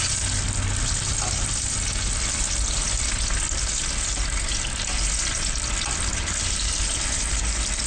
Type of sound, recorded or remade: recorded